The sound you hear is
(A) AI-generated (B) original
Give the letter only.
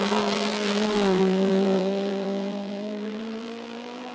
A